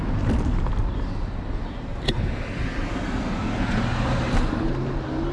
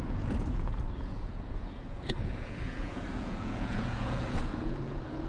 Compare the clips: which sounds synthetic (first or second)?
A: second